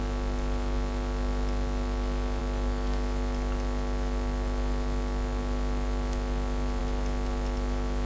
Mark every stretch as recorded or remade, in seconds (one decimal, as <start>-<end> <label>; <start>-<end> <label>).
0.0-8.1 recorded